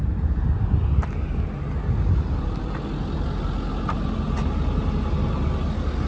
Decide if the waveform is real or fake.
real